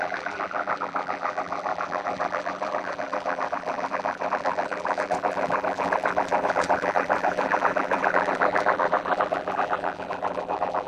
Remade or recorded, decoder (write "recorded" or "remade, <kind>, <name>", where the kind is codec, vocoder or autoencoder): remade, vocoder, BigVGAN v2